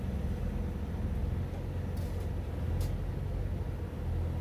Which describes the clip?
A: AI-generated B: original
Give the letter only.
B